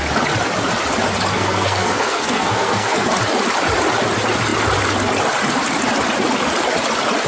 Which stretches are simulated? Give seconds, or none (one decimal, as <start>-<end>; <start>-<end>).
1.3-3.1